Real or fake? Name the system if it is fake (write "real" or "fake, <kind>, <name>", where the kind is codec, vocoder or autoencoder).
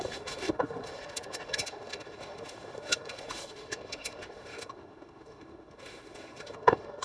fake, autoencoder, DAC-VAE